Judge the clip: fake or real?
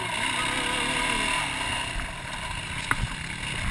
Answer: real